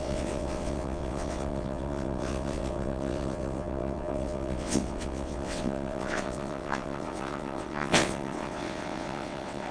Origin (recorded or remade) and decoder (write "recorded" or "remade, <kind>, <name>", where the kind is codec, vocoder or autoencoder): remade, vocoder, WaveNeXt